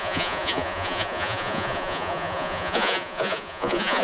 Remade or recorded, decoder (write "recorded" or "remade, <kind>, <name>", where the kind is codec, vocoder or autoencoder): remade, vocoder, Vocos